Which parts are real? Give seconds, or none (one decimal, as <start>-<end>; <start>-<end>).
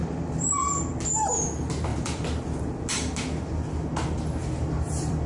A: 0.9-1.9; 2.6-4.4